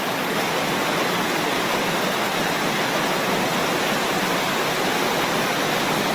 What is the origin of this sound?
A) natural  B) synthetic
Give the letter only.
A